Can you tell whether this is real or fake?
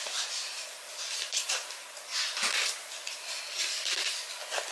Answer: real